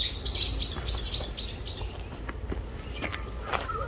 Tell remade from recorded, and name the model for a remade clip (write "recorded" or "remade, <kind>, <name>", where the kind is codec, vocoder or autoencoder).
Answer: recorded